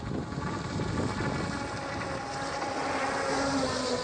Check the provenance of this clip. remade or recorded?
recorded